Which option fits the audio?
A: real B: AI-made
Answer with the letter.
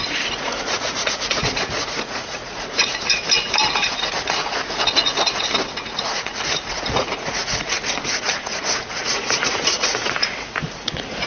B